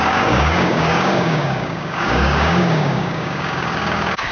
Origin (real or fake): fake